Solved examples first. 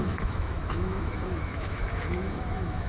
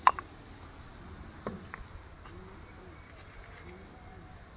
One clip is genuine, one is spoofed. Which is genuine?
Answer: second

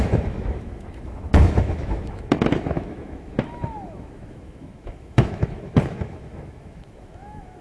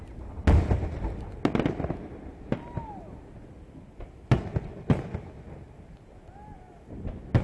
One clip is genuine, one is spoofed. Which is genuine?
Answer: second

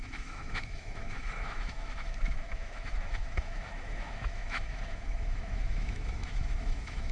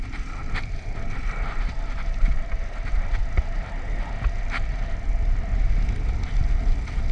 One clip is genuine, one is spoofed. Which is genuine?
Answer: second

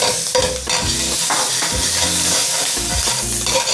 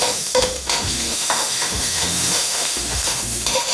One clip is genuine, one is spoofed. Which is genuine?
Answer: first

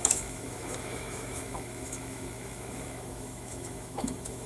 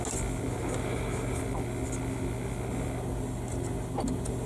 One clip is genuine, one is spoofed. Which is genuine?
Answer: second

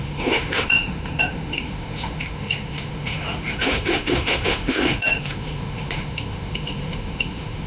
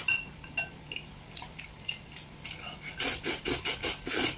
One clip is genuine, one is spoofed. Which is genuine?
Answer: second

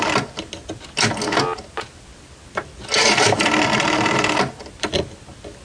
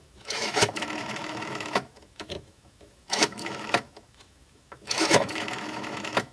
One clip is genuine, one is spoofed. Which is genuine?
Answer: first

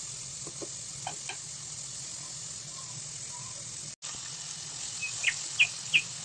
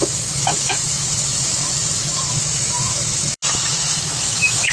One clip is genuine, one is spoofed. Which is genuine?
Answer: first